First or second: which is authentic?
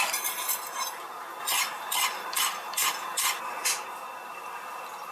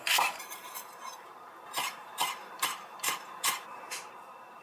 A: first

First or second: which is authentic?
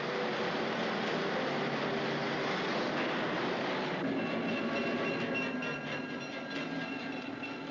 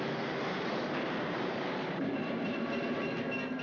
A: first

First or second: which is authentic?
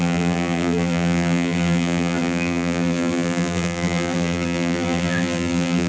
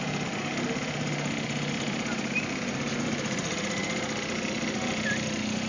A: second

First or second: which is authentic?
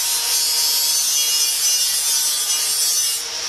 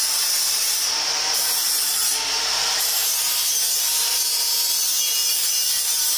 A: first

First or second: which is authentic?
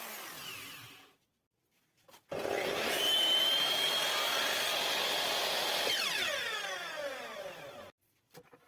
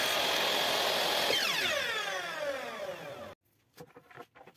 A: second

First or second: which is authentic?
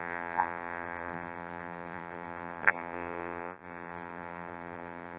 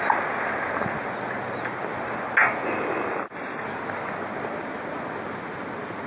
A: second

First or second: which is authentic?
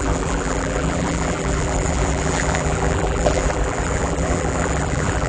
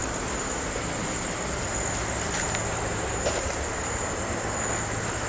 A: second